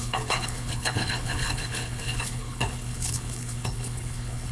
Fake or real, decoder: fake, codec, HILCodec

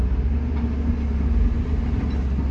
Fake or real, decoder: real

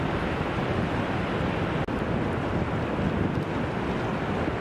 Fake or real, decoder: real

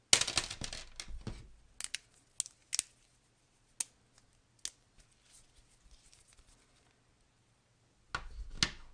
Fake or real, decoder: real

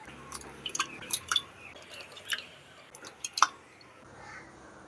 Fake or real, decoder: fake, vocoder, BigVGAN v2